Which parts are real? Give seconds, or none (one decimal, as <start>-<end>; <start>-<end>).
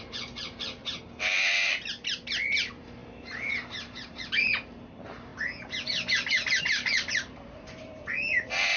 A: 0.8-1.7; 5.3-6.6